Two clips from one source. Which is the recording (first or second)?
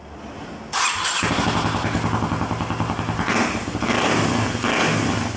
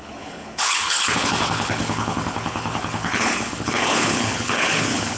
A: first